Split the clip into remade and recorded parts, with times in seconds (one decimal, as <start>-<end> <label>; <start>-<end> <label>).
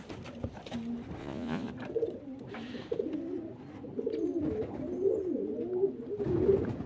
0.0-1.2 recorded; 1.2-1.7 remade; 1.7-6.9 recorded